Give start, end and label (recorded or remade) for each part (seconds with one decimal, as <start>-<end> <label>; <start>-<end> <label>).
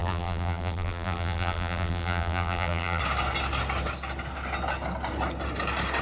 0.0-3.0 remade; 3.0-6.0 recorded